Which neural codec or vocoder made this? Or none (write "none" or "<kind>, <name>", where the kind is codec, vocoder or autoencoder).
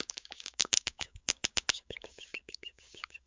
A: codec, DAC